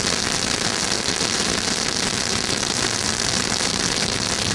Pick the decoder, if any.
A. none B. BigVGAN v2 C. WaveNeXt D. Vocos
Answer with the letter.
A